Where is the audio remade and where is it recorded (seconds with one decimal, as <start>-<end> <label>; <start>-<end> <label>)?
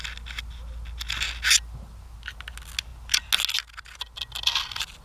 0.0-5.0 recorded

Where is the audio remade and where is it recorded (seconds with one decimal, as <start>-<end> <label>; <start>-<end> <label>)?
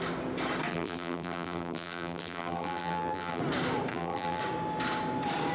0.0-0.7 recorded; 0.7-3.4 remade; 3.4-3.9 recorded; 3.9-4.4 remade; 4.4-5.5 recorded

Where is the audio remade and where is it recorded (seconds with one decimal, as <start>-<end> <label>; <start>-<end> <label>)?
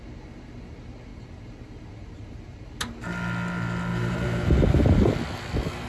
0.0-1.1 recorded; 1.1-2.7 remade; 2.7-3.9 recorded; 3.9-4.4 remade; 4.4-5.9 recorded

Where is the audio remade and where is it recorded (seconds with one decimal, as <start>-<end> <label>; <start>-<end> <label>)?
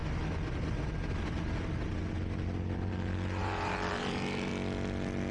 0.0-3.4 recorded; 3.4-4.5 remade; 4.5-5.3 recorded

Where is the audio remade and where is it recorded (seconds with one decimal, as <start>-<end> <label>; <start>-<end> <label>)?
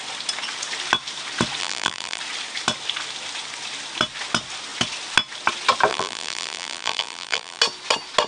0.0-1.6 recorded; 1.6-2.2 remade; 2.2-5.9 recorded; 5.9-7.6 remade; 7.6-8.3 recorded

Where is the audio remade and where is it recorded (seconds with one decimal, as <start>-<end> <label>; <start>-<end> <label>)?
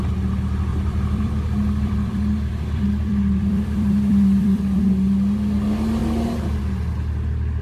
0.0-0.7 recorded; 0.7-4.8 remade; 4.8-7.6 recorded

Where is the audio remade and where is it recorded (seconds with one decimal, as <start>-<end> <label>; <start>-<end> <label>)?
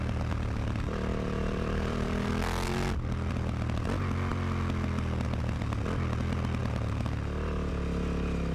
0.0-1.1 recorded; 1.1-2.3 remade; 2.3-8.5 recorded